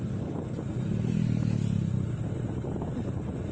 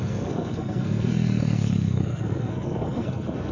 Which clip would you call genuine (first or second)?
first